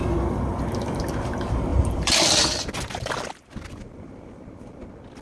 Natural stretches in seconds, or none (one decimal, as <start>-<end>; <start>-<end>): 0.0-1.7; 4.8-5.2

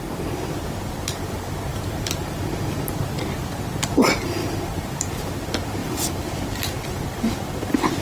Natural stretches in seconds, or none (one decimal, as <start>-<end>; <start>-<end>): 0.0-1.7; 2.4-4.4; 5.1-5.8; 6.3-8.0

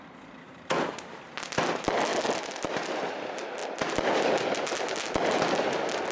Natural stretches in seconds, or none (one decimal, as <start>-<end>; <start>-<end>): 0.0-2.1; 2.6-6.1